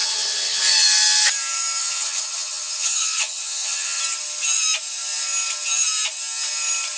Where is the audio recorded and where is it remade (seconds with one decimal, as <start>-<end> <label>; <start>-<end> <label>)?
0.0-0.6 remade; 0.6-1.8 recorded; 1.8-4.0 remade; 4.0-7.0 recorded